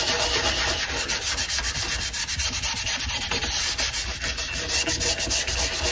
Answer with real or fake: real